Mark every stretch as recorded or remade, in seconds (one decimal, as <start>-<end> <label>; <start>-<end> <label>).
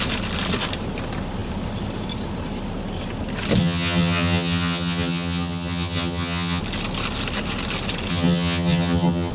0.0-3.6 recorded; 3.6-6.6 remade; 6.6-8.1 recorded; 8.1-9.3 remade